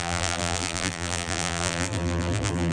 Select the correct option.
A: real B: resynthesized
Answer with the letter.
B